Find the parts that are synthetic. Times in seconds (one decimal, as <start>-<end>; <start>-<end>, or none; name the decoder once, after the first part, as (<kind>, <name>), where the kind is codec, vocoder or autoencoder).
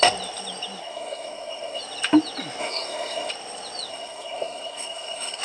0.8-1.8 (codec, SNAC); 2.6-3.3; 3.9-5.4